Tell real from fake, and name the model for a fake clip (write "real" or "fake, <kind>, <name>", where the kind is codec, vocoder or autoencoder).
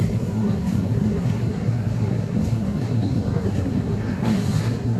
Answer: fake, codec, SNAC